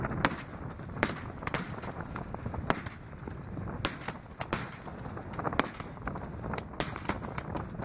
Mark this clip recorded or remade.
recorded